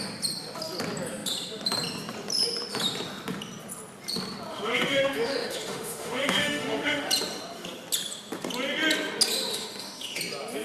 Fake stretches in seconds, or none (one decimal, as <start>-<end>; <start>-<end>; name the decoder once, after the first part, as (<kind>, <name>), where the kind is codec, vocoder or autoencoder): 4.5-7.1 (autoencoder, DAC-VAE); 9.5-10.2